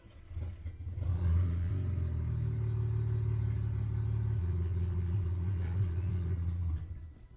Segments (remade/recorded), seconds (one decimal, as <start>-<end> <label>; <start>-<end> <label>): 0.0-1.1 recorded; 1.1-1.7 remade; 1.7-4.4 recorded; 4.4-7.4 remade

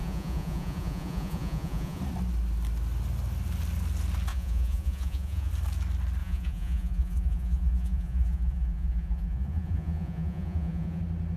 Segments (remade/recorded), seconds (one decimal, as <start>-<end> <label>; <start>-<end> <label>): 0.0-2.0 remade; 2.0-4.3 recorded; 4.3-5.5 remade; 5.5-6.2 recorded; 6.2-11.0 remade; 11.0-11.4 recorded

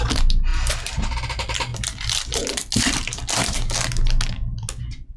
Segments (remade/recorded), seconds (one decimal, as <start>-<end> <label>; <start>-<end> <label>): 0.0-5.2 recorded

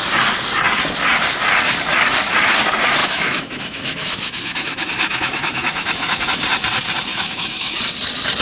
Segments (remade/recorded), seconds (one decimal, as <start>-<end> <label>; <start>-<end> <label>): 0.0-3.0 recorded; 3.0-6.2 remade; 6.2-7.1 recorded; 7.1-7.8 remade; 7.8-8.4 recorded